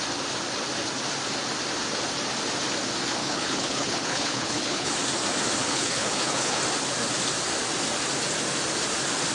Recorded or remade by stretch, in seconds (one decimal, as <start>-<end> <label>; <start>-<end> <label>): 0.0-3.2 recorded; 3.2-4.9 remade; 4.9-5.6 recorded; 5.6-6.6 remade; 6.6-9.3 recorded